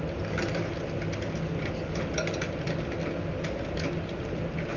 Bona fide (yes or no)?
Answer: yes